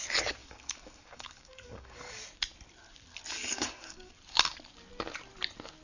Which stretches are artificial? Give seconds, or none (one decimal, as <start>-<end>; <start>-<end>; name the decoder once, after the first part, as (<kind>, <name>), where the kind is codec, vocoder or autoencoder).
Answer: 0.4-2.2 (codec, DAC); 3.3-4.1